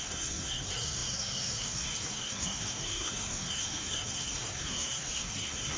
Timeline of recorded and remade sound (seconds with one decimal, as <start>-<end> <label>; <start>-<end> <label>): 0.0-5.8 remade

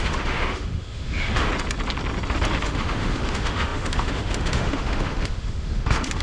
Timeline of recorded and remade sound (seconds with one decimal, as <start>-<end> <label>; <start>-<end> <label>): 0.0-1.5 remade; 1.5-2.6 recorded; 2.6-6.2 remade

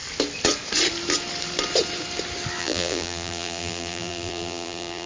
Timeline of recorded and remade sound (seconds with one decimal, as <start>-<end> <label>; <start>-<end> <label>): 0.0-2.6 recorded; 2.6-5.1 remade

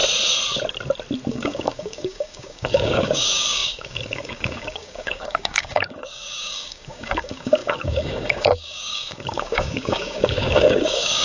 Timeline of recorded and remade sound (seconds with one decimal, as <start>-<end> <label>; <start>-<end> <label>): 0.0-1.3 recorded; 1.3-11.2 remade